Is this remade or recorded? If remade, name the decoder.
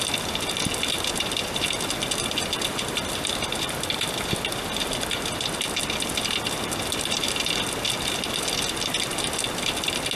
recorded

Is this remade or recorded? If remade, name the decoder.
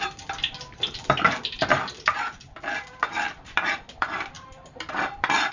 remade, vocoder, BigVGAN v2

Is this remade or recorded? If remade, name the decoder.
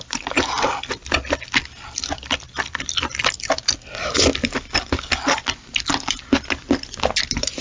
recorded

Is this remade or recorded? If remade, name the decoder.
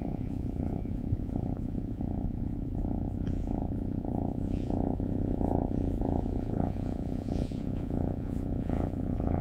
remade, vocoder, Vocos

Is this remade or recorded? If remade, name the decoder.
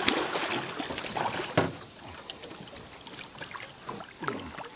recorded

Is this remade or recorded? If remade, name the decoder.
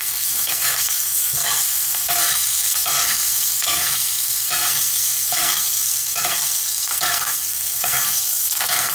remade, codec, SNAC